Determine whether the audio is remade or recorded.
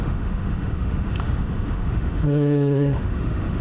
remade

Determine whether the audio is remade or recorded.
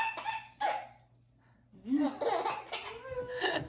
recorded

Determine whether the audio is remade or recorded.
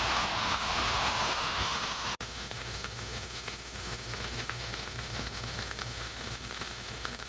remade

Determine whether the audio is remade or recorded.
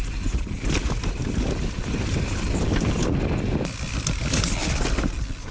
recorded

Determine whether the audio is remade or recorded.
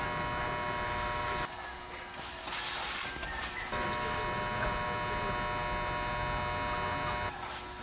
recorded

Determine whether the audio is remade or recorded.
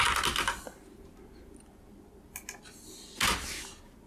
recorded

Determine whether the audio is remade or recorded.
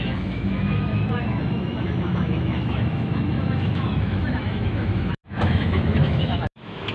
remade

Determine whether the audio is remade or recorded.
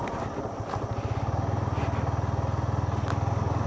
recorded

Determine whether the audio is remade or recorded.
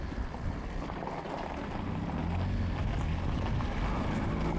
recorded